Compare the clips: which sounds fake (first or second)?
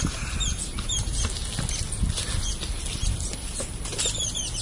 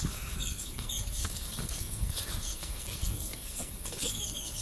second